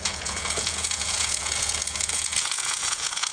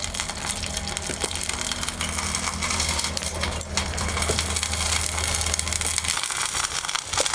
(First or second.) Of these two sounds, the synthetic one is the first